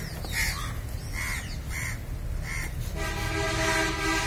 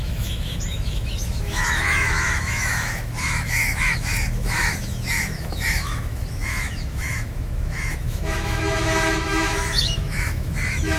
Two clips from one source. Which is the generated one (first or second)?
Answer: second